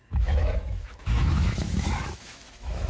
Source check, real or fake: fake